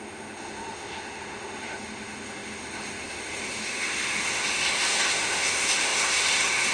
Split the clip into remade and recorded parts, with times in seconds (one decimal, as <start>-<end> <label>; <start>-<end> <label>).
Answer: 0.0-6.7 remade